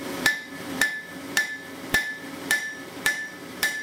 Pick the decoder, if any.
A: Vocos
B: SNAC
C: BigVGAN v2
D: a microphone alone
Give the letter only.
C